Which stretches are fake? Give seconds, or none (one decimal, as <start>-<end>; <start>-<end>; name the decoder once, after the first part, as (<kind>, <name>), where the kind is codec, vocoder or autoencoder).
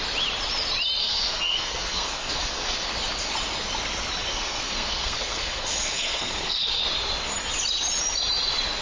1.0-2.9 (codec, SNAC); 4.3-6.8